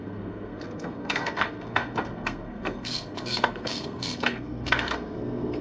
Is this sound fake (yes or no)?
yes